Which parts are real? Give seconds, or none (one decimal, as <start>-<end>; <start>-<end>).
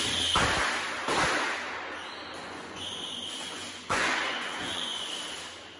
0.0-2.4; 5.1-5.8